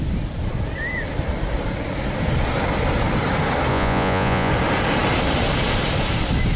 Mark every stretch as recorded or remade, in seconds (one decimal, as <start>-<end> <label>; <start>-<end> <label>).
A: 0.0-3.7 recorded; 3.7-4.5 remade; 4.5-6.6 recorded